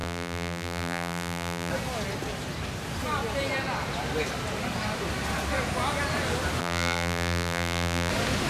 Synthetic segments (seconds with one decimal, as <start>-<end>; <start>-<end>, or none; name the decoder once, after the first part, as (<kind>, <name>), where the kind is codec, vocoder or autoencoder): 0.0-1.7 (vocoder, BigVGAN v2); 6.6-8.1